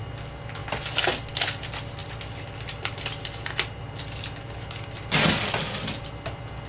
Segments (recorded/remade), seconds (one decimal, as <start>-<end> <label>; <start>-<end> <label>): 0.0-6.7 recorded